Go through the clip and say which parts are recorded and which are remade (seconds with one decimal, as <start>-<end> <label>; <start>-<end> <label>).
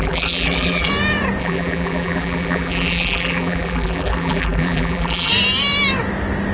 0.0-0.9 remade; 0.9-1.4 recorded; 1.4-5.3 remade; 5.3-6.5 recorded